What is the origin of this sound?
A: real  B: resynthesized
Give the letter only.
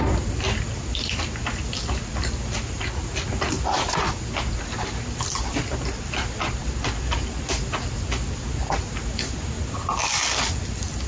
A